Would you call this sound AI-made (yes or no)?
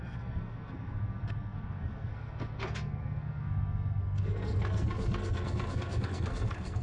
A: yes